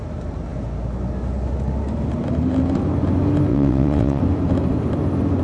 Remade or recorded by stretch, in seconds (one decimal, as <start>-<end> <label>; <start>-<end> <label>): 0.0-3.5 recorded; 3.5-4.2 remade; 4.2-5.4 recorded